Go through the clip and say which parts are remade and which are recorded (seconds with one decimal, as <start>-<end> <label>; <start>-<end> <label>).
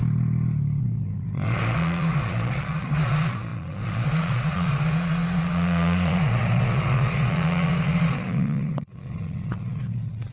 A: 0.0-0.8 recorded; 0.8-10.3 remade